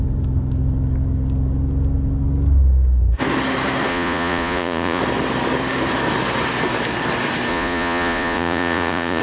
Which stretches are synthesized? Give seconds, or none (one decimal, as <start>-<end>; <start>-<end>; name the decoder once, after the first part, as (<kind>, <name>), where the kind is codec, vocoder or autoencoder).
3.9-5.0 (vocoder, Vocos); 7.5-9.2